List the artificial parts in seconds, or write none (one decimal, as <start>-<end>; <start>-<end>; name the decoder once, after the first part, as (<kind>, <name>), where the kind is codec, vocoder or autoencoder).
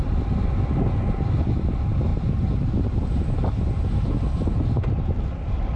none